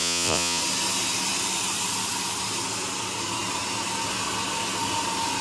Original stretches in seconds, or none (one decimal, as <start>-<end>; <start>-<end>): 0.6-5.4